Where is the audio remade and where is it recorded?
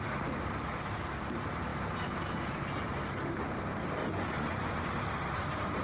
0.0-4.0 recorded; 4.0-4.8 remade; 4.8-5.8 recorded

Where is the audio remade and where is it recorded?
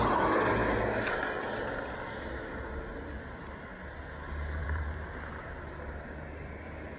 0.0-4.6 recorded; 4.6-5.8 remade; 5.8-7.0 recorded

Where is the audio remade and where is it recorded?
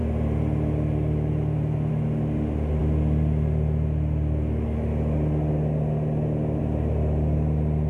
0.0-7.9 recorded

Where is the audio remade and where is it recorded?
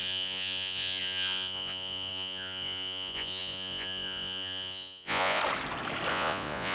0.0-5.4 remade; 5.4-6.1 recorded; 6.1-6.7 remade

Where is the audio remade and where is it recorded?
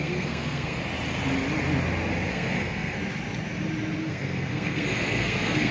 0.0-0.8 remade; 0.8-2.3 recorded; 2.3-3.0 remade; 3.0-4.0 recorded; 4.0-5.7 remade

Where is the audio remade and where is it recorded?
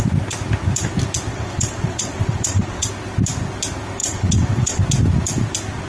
0.0-1.3 recorded; 1.3-2.9 remade; 2.9-4.0 recorded; 4.0-4.8 remade; 4.8-5.9 recorded